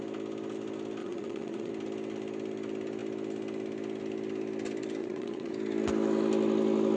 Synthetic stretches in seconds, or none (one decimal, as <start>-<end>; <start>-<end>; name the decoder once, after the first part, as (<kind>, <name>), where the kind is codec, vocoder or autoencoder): 1.0-1.7 (vocoder, Vocos); 5.0-5.5